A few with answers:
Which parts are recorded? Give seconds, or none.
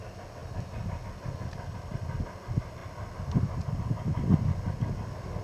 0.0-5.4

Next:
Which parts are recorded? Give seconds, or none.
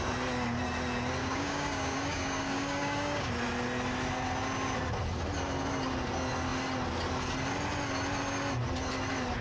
0.0-1.2; 3.3-9.4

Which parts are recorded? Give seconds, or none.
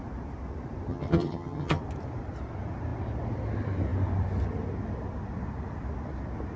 0.0-0.9; 1.8-6.6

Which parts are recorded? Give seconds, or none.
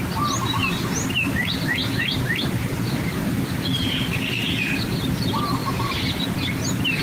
0.0-0.6; 4.0-5.6; 6.6-7.0